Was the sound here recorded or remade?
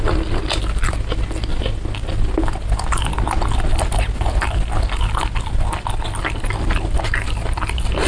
recorded